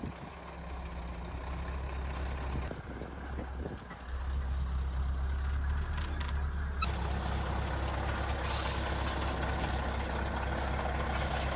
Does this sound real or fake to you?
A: real